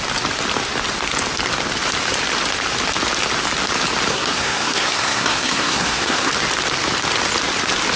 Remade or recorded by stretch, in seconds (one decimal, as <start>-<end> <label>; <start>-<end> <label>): 0.0-4.1 recorded; 4.1-6.3 remade; 6.3-8.0 recorded